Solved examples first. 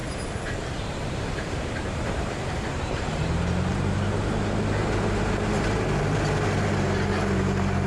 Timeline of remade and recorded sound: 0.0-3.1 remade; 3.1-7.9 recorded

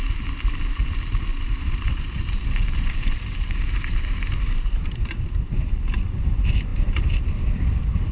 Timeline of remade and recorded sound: 0.0-1.3 recorded; 1.3-5.9 remade; 5.9-8.1 recorded